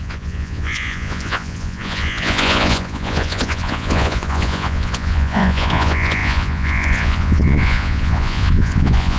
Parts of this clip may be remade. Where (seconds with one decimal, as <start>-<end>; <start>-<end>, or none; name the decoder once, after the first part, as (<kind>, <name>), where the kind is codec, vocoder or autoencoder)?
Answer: 0.0-9.2 (vocoder, Vocos)